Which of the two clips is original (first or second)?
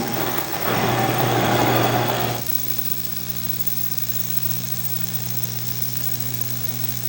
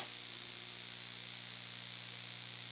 second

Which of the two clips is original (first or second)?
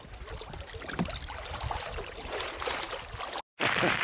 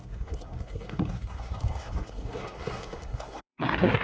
first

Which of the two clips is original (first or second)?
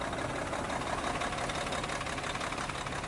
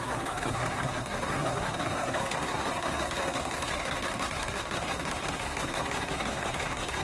first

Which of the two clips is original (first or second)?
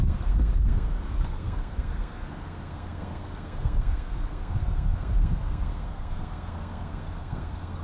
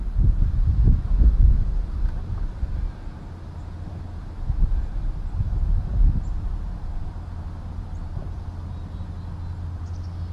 second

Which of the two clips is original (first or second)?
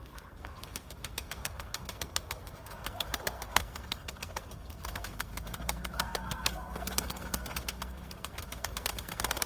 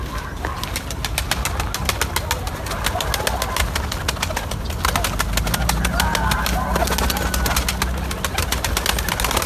second